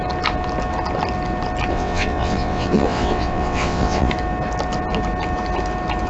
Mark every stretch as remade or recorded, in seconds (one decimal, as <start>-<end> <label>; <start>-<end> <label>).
0.0-1.7 recorded; 1.7-4.1 remade; 4.1-6.1 recorded